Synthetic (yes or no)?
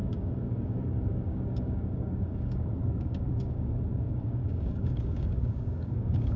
yes